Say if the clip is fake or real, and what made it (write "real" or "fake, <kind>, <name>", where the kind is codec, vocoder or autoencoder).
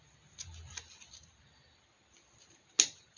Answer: real